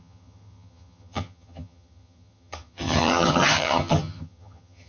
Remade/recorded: remade